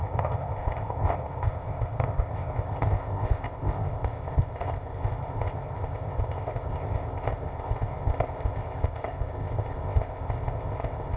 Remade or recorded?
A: remade